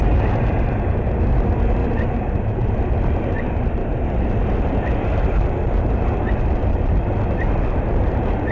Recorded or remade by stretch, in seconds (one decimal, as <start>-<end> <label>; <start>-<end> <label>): 0.0-3.8 remade; 3.8-8.0 recorded; 8.0-8.5 remade